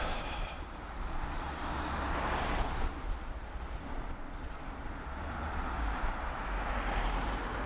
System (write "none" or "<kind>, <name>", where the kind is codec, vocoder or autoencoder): vocoder, BigVGAN v2